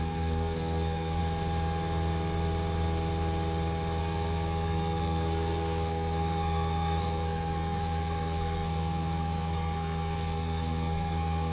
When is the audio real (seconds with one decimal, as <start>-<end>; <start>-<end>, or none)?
1.2-4.0